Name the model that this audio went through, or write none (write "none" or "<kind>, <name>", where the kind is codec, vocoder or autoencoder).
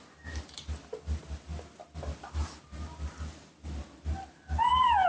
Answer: none